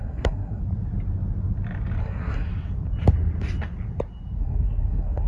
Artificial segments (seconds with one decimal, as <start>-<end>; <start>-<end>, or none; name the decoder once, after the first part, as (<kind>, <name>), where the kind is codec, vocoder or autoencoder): 0.0-0.6 (codec, SNAC); 2.0-2.5; 4.4-5.3